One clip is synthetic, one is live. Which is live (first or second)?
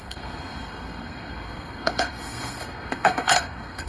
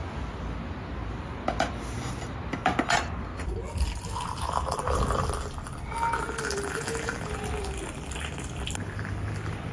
second